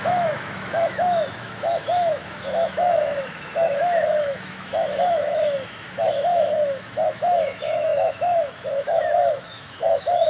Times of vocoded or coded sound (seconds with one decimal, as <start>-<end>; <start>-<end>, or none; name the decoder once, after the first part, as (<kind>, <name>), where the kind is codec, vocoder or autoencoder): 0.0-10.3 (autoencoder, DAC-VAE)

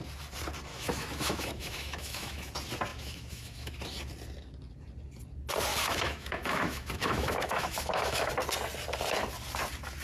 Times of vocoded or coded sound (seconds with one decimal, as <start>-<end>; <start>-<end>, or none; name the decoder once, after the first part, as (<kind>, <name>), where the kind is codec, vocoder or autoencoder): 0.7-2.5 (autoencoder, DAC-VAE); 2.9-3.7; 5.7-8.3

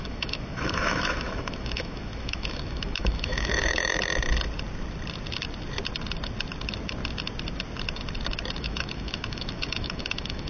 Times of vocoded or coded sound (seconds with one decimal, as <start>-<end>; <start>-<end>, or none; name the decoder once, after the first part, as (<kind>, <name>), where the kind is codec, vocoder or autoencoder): 0.0-3.9 (autoencoder, DAC-VAE); 8.6-10.5